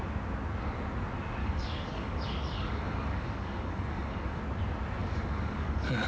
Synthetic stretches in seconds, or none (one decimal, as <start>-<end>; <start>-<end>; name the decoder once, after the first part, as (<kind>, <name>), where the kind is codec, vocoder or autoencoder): 1.4-4.4 (codec, DAC); 5.0-6.1